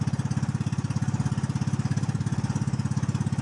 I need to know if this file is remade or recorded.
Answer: recorded